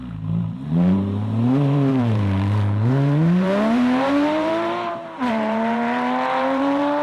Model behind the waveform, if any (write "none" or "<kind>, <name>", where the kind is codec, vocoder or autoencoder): vocoder, BigVGAN v2